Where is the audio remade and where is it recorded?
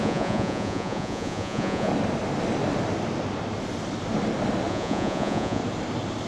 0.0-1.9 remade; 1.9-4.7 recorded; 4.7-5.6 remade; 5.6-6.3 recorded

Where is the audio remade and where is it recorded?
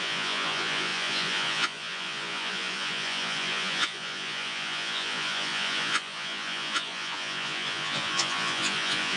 0.0-9.2 remade